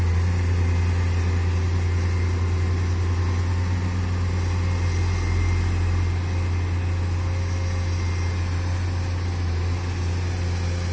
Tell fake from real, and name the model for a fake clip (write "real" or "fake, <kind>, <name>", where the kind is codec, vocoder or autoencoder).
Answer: real